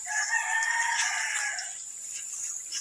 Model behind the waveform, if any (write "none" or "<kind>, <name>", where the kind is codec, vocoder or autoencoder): none